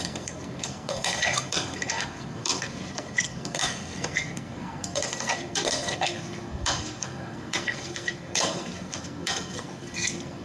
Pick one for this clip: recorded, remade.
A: remade